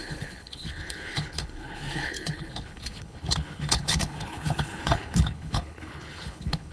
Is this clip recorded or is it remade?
remade